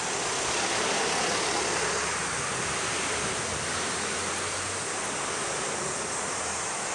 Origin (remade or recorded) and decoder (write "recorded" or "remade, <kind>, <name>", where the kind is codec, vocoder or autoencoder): recorded